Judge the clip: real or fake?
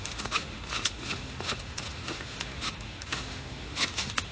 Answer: fake